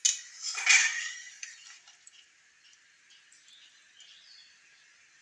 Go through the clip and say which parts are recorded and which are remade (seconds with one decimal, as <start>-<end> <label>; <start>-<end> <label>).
0.0-0.9 recorded; 0.9-3.0 remade; 3.0-5.2 recorded